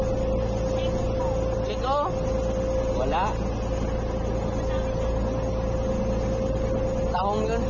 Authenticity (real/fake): real